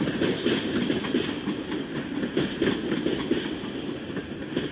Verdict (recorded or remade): recorded